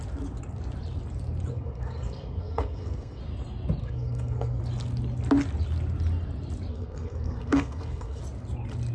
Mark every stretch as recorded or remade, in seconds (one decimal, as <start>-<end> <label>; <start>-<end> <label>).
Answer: 0.0-1.5 recorded; 1.5-3.2 remade; 3.2-3.8 recorded; 3.8-4.6 remade; 4.6-6.7 recorded; 6.7-8.2 remade; 8.2-8.9 recorded